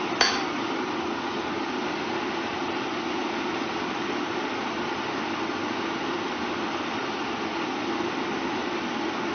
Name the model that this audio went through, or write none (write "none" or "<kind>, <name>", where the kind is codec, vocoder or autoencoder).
vocoder, BigVGAN v2